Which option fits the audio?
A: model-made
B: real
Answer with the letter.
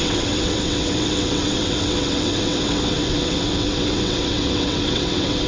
A